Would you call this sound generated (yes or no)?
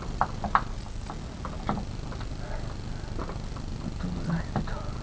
no